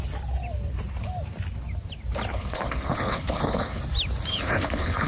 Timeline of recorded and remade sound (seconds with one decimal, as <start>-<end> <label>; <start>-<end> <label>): 0.0-2.3 recorded; 2.3-3.8 remade; 3.8-4.3 recorded; 4.3-5.1 remade